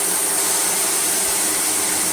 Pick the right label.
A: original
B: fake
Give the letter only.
A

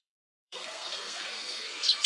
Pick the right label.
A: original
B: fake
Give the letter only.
B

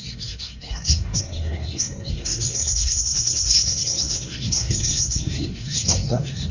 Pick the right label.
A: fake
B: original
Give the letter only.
A